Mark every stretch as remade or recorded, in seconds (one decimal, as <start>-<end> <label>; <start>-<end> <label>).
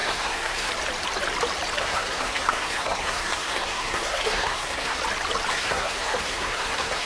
0.0-0.7 remade; 0.7-1.8 recorded; 1.8-5.0 remade; 5.0-5.5 recorded; 5.5-7.1 remade